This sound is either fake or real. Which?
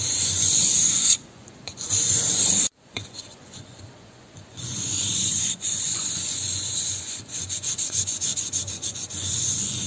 fake